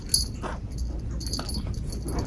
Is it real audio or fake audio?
real